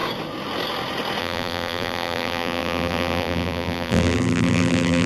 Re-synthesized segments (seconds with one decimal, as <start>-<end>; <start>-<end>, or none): 1.2-5.1